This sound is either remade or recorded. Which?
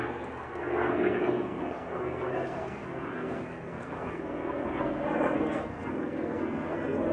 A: remade